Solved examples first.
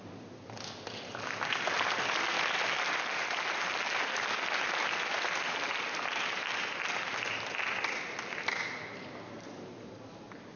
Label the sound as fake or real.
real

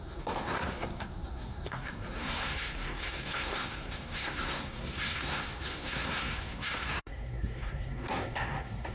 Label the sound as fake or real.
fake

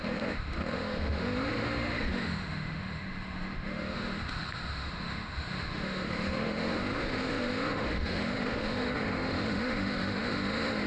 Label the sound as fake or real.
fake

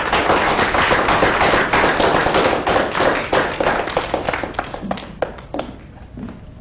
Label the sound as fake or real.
real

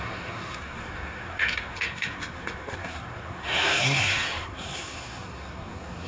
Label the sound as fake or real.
fake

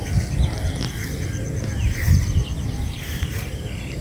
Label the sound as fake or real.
real